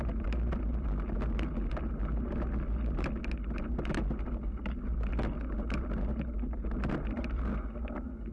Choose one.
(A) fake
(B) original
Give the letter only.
B